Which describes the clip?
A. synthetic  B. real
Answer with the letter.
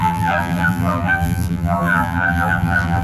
A